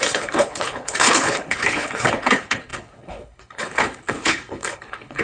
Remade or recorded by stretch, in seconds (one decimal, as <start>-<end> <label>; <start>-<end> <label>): 0.0-5.2 remade